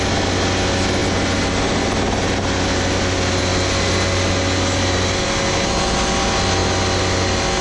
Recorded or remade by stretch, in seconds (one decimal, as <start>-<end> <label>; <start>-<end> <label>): 0.0-7.6 recorded